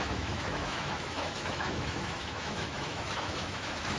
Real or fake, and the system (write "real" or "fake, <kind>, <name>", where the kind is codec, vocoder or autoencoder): fake, autoencoder, DAC-VAE